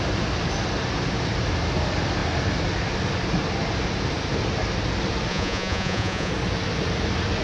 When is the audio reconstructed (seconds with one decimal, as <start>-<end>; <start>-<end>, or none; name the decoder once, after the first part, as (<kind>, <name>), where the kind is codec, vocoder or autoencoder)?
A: 5.3-6.3 (vocoder, Vocos)